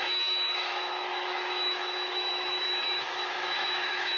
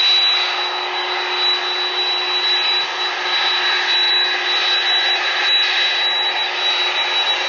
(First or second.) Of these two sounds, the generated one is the first